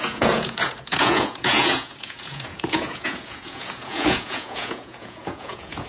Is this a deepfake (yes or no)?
yes